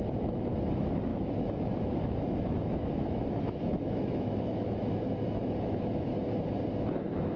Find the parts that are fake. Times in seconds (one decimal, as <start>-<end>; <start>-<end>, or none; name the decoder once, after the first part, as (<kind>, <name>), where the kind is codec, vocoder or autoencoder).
0.0-6.1 (autoencoder, DAC-VAE); 6.8-7.4